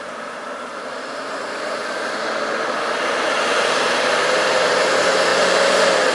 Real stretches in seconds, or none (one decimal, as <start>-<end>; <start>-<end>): 1.8-3.3; 5.3-6.1